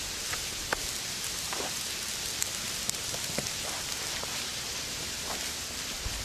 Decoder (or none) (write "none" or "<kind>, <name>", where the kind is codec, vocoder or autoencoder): vocoder, BigVGAN v2